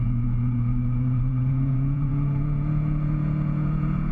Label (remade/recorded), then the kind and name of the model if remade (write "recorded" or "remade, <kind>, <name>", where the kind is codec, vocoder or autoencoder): remade, vocoder, Vocos